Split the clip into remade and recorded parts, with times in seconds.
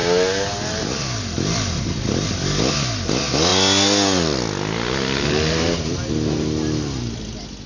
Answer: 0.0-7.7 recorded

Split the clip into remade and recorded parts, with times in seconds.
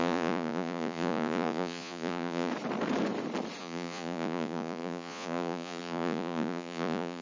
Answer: 0.0-2.5 remade; 2.5-3.6 recorded; 3.6-7.2 remade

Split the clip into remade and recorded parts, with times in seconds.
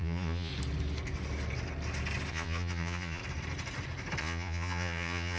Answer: 0.0-0.5 remade; 0.5-2.3 recorded; 2.3-3.2 remade; 3.2-4.2 recorded; 4.2-5.4 remade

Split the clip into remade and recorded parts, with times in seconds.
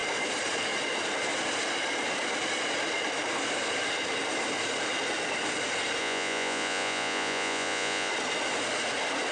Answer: 0.0-6.0 recorded; 6.0-8.1 remade; 8.1-9.3 recorded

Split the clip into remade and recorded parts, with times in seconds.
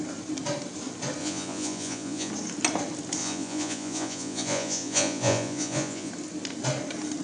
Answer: 0.0-1.2 recorded; 1.2-2.3 remade; 2.3-3.2 recorded; 3.2-6.1 remade; 6.1-7.2 recorded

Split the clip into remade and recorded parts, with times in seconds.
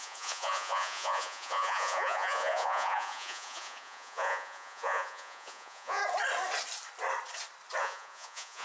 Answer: 0.0-6.0 remade; 6.0-7.8 recorded; 7.8-8.6 remade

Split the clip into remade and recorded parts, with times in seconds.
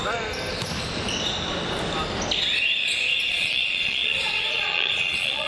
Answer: 0.0-3.3 recorded; 3.3-5.5 remade